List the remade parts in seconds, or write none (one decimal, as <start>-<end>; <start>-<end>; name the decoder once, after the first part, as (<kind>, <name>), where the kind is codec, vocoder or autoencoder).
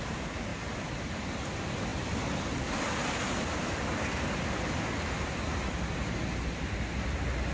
0.5-1.4 (vocoder, BigVGAN v2)